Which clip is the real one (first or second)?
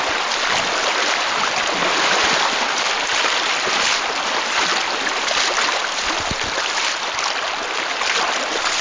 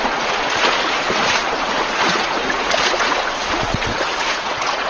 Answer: first